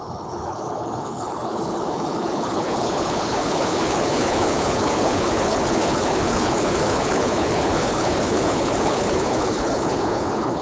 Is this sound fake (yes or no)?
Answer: yes